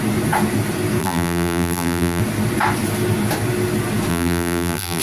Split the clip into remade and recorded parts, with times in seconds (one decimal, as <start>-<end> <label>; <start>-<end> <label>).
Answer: 0.0-1.0 recorded; 1.0-2.2 remade; 2.2-4.1 recorded; 4.1-5.0 remade